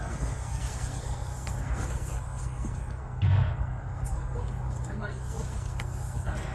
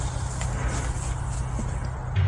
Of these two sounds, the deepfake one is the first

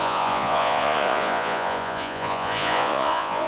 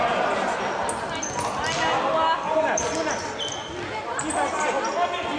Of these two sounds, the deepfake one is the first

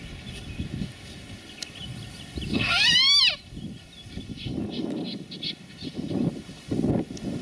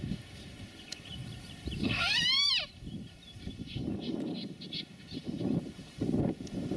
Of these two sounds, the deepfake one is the second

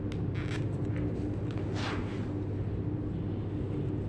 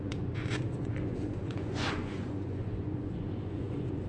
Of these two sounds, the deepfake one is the second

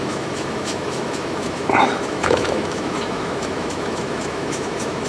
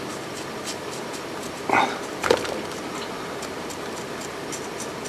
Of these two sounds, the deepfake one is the first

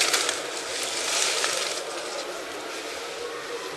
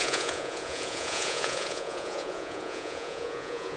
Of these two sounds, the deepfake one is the second